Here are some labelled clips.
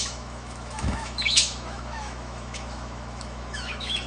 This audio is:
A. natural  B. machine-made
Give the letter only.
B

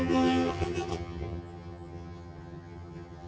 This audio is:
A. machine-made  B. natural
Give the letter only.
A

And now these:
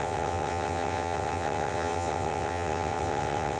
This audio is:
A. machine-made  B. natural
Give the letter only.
A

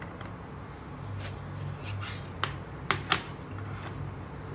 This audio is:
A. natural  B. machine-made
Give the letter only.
A